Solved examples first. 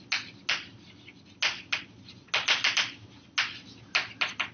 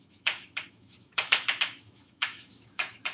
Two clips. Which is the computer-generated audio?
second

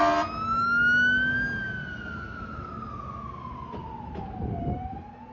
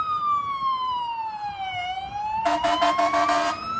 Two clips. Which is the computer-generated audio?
second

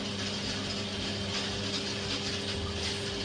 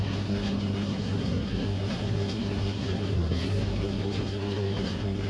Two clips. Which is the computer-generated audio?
second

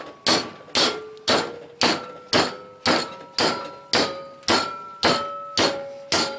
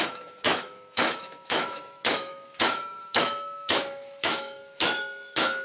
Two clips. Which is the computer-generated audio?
second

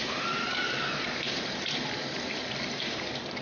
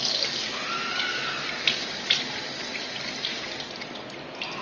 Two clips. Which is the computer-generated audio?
first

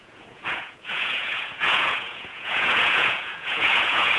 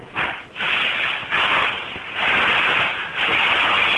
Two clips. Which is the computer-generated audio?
first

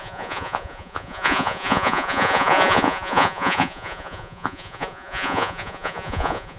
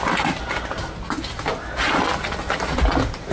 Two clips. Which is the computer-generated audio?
first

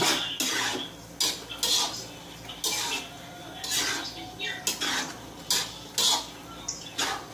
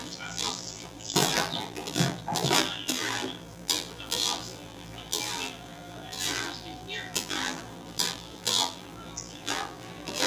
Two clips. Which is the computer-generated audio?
second